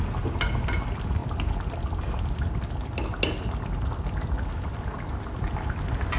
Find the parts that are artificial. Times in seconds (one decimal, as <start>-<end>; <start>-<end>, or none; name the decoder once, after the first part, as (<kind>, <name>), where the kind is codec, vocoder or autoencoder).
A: none